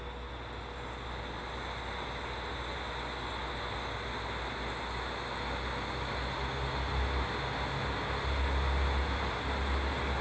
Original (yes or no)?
yes